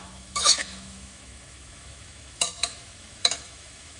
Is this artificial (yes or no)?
yes